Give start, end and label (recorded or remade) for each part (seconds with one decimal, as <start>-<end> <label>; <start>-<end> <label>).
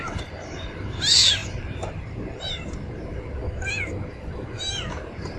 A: 0.0-3.4 remade; 3.4-4.9 recorded; 4.9-5.4 remade